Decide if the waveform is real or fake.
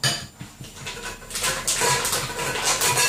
real